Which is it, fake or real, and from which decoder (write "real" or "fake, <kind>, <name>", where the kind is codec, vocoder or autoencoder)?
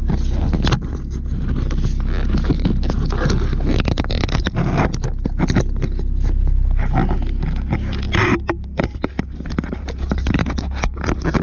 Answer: real